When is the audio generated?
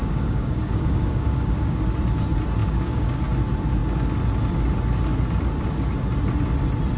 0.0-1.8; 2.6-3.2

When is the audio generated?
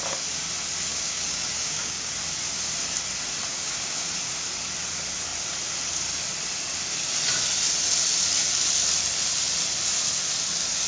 0.9-2.1; 3.5-4.0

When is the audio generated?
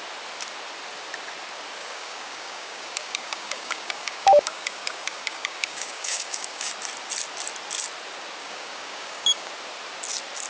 1.8-6.7; 8.4-9.5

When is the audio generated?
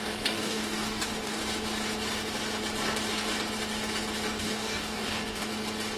0.0-1.4; 4.4-5.4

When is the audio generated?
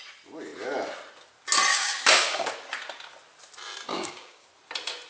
1.7-2.5; 3.9-4.5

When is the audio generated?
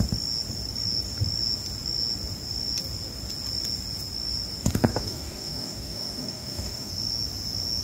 4.9-6.9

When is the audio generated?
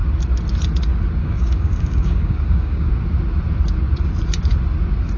1.2-2.9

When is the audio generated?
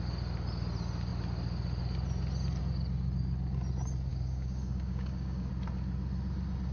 4.1-5.5